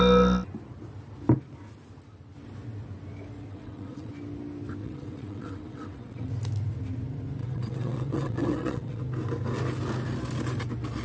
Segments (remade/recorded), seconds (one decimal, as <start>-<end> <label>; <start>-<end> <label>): 0.0-3.5 recorded; 3.5-4.1 remade; 4.1-4.8 recorded; 4.8-6.3 remade; 6.3-7.4 recorded; 7.4-9.0 remade; 9.0-11.0 recorded